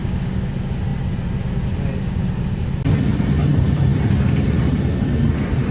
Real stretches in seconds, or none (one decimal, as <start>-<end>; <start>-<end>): 0.5-5.7